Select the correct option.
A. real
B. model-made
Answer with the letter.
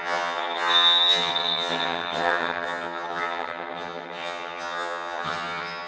B